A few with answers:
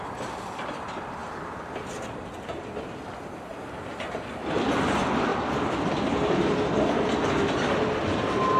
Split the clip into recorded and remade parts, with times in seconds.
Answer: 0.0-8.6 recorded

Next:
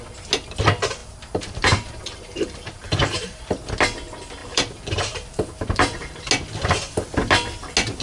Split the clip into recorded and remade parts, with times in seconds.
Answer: 0.0-1.0 recorded; 1.0-3.7 remade; 3.7-4.4 recorded; 4.4-6.2 remade; 6.2-8.0 recorded

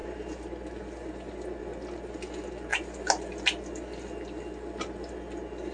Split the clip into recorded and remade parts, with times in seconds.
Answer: 0.0-5.7 recorded

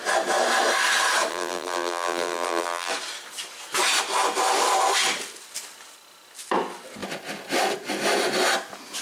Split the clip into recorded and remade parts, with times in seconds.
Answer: 0.0-1.3 recorded; 1.3-2.9 remade; 2.9-9.0 recorded

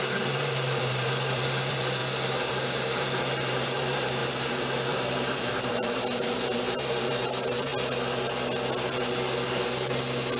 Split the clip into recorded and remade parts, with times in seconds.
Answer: 0.0-2.0 remade; 2.0-2.5 recorded; 2.5-7.7 remade; 7.7-10.4 recorded

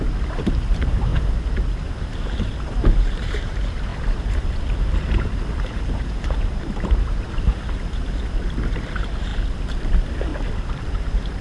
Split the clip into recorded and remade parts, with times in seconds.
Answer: 0.0-10.3 remade; 10.3-10.8 recorded; 10.8-11.4 remade

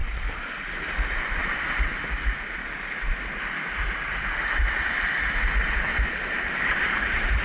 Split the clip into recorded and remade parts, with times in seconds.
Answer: 0.0-5.9 recorded; 5.9-7.4 remade

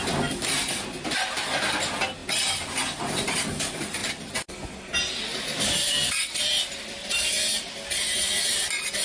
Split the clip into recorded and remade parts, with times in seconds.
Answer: 0.0-4.0 remade; 4.0-5.7 recorded; 5.7-9.0 remade